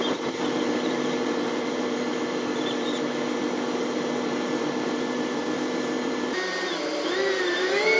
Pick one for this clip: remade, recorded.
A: remade